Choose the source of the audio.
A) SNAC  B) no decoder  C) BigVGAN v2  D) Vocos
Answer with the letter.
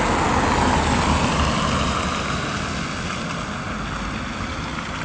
B